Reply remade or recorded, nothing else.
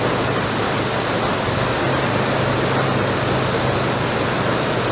recorded